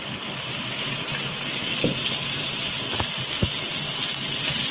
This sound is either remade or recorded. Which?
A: recorded